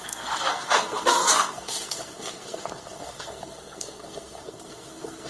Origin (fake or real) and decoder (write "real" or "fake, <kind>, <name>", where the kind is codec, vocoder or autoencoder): fake, codec, SNAC